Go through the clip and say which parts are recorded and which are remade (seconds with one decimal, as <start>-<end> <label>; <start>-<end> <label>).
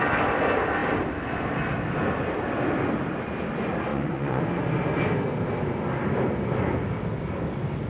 0.0-3.9 recorded; 3.9-4.4 remade; 4.4-7.9 recorded